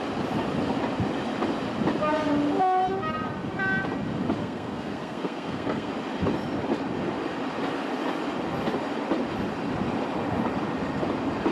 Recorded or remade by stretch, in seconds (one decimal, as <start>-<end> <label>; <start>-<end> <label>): 0.0-4.4 recorded; 4.4-5.9 remade; 5.9-11.5 recorded